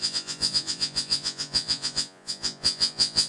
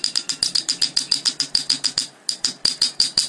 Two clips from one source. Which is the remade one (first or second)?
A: first